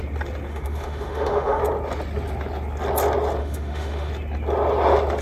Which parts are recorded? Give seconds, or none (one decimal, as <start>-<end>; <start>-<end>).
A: 0.0-0.5; 1.6-3.4; 4.1-5.2